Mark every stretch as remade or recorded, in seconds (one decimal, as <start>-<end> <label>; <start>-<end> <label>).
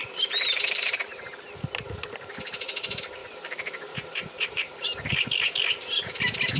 0.0-1.0 remade; 1.0-3.2 recorded; 3.2-5.1 remade; 5.1-6.6 recorded